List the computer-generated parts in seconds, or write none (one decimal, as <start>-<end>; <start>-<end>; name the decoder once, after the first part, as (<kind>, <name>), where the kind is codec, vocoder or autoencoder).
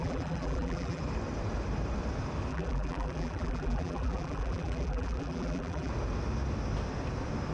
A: 0.0-1.0 (vocoder, BigVGAN v2); 2.5-5.9